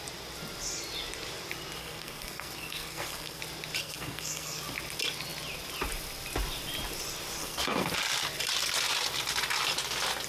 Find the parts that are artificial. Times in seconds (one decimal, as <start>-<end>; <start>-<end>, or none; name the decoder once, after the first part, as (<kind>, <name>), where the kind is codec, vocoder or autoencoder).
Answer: 1.8-3.4 (codec, SNAC); 3.8-4.6; 7.4-7.9